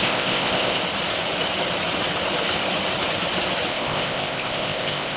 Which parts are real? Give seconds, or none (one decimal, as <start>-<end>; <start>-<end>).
0.8-3.7